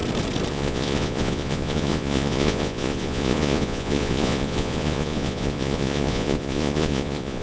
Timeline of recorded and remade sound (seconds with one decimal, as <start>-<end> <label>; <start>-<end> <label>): 0.0-0.5 recorded; 0.5-7.4 remade